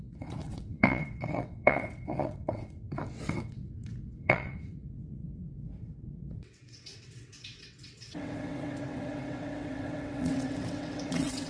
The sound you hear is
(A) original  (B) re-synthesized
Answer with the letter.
B